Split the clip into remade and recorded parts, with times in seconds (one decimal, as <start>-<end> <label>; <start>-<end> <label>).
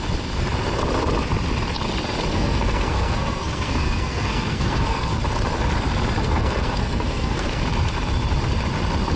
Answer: 0.0-2.3 recorded; 2.3-5.2 remade; 5.2-6.2 recorded; 6.2-7.6 remade; 7.6-9.2 recorded